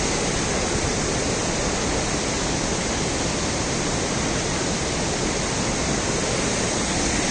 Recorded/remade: recorded